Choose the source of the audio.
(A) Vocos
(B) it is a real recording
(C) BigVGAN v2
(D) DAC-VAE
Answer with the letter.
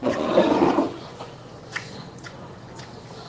A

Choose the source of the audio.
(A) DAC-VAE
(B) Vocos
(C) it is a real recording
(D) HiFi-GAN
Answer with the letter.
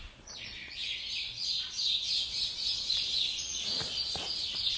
B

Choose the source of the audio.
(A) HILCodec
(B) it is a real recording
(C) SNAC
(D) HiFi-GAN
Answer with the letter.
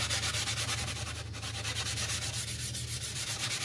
B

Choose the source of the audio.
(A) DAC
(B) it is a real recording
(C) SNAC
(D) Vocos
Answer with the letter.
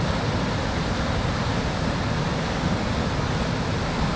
B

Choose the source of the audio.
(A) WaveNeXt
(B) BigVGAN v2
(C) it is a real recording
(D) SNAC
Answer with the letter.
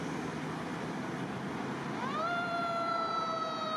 B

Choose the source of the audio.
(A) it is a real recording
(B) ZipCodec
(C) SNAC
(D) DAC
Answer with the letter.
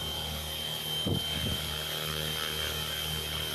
D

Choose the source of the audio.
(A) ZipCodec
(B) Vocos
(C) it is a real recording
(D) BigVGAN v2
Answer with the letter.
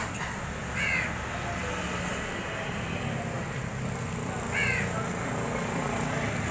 C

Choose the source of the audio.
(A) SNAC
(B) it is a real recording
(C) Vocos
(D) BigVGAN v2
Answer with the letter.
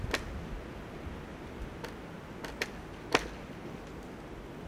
B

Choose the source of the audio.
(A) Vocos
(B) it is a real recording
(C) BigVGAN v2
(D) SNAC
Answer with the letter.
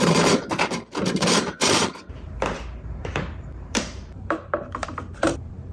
C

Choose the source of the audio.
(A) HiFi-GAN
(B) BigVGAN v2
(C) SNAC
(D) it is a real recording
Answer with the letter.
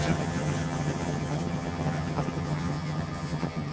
A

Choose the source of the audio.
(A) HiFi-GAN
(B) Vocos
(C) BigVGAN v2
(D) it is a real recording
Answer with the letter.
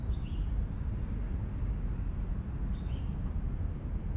D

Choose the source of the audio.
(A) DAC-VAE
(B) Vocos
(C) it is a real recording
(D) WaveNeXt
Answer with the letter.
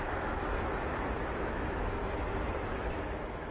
A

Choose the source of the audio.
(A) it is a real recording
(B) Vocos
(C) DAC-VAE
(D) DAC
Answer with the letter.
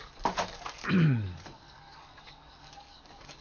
D